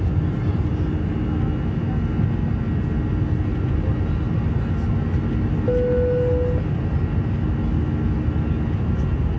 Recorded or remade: recorded